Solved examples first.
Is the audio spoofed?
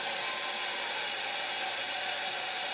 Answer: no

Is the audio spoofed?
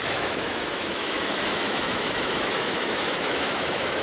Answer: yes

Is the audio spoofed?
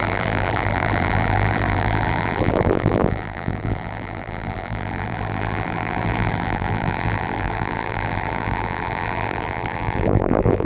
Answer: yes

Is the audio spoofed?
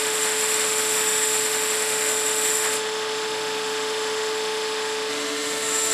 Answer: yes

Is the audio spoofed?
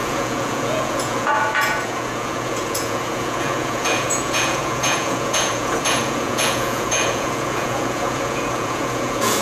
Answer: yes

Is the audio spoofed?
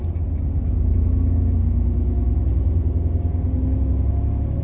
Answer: no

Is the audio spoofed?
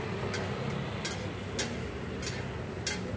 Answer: no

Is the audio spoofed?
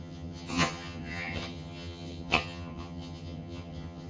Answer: yes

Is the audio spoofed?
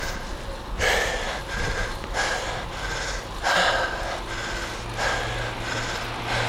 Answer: no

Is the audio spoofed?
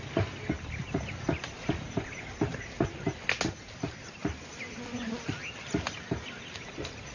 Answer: no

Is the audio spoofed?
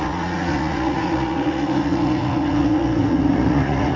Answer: yes